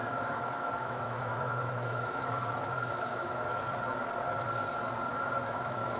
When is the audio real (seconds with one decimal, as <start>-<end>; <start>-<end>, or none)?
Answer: 3.6-5.1